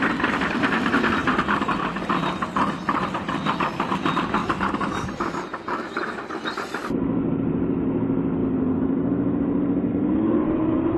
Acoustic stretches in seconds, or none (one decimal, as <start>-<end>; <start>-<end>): 0.0-11.0